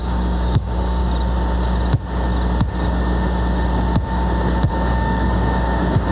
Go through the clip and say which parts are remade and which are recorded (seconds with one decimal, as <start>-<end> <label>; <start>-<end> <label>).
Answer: 0.0-1.0 remade; 1.0-4.7 recorded; 4.7-6.1 remade